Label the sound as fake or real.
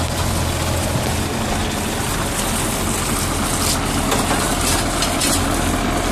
real